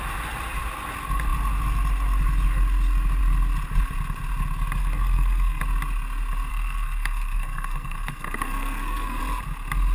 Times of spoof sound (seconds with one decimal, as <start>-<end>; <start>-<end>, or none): 4.8-5.6; 6.5-9.2